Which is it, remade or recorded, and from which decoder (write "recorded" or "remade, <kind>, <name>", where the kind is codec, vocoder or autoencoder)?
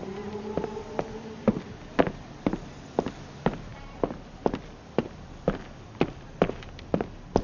recorded